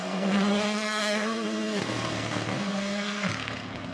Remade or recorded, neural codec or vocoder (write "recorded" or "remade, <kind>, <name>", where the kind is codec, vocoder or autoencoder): remade, codec, SNAC